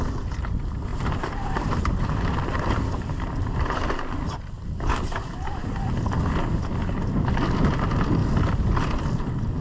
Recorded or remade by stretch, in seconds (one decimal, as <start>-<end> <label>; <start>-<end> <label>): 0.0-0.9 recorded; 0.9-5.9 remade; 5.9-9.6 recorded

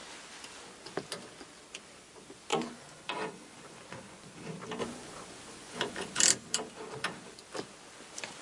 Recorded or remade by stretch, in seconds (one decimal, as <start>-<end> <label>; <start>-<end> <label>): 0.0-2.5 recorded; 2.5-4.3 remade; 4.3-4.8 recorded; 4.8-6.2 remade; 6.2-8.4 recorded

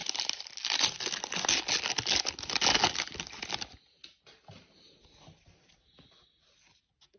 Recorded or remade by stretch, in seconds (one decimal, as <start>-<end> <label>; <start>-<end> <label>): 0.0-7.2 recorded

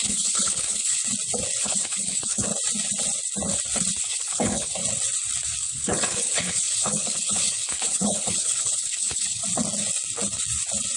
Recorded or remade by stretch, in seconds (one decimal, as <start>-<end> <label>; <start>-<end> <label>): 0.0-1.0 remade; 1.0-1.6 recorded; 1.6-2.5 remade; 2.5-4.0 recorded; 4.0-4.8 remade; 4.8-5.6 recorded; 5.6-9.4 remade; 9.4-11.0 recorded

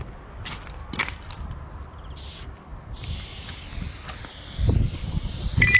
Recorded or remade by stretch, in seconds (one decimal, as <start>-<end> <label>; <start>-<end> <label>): 0.0-5.8 recorded

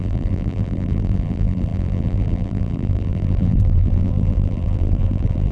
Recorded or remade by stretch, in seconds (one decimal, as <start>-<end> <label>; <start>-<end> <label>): 0.0-5.5 remade

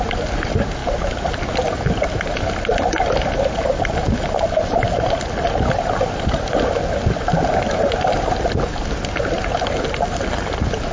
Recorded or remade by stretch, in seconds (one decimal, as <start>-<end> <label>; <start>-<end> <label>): 0.0-10.9 recorded